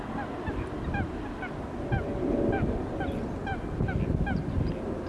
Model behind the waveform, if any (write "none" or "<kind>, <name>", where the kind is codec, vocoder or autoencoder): none